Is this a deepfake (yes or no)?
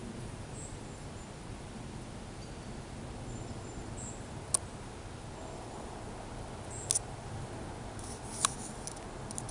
no